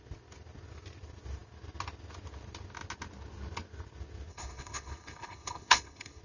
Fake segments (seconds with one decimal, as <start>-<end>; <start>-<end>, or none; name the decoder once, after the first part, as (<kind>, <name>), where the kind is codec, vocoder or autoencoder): 4.3-6.2 (codec, HILCodec)